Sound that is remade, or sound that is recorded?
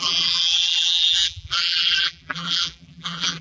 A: remade